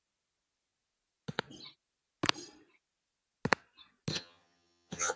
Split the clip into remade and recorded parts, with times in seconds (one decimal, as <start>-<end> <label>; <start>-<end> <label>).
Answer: 0.0-4.1 recorded; 4.1-5.2 remade